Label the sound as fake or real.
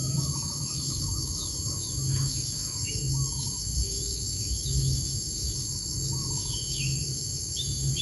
fake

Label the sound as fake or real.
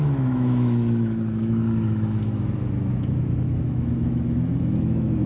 fake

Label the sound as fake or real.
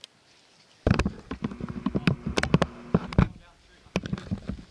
real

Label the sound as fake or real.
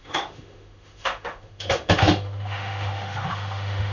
fake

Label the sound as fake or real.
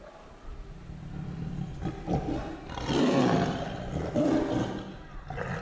real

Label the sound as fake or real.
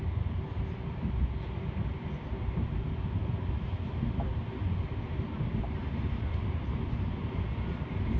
real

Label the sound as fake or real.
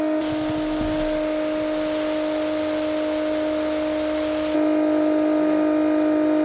real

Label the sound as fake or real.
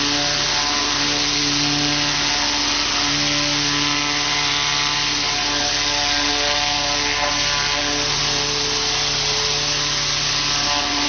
real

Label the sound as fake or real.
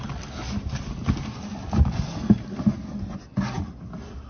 real